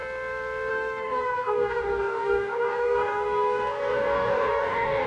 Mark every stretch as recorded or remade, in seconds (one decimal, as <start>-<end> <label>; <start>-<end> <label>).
0.0-0.7 recorded; 0.7-5.1 remade